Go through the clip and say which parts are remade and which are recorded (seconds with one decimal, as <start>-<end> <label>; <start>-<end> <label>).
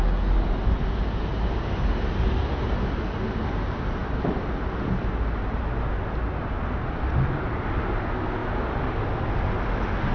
0.0-10.1 recorded